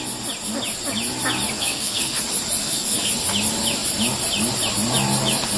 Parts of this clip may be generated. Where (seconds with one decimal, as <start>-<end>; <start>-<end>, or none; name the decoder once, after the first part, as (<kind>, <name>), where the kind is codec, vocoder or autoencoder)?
1.6-2.2 (codec, SNAC); 2.6-3.1